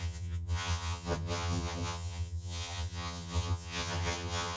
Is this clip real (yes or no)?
no